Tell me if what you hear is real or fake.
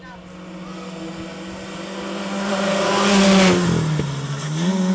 real